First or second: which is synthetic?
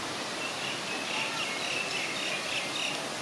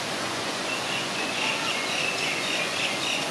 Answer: second